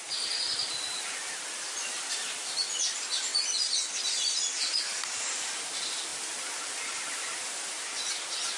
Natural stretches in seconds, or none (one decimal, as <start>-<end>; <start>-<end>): 0.0-8.6